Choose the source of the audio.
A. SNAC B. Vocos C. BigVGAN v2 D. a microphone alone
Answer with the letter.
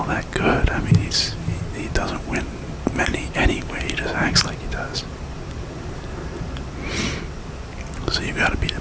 D